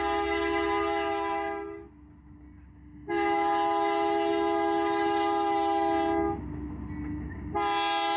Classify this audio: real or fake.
real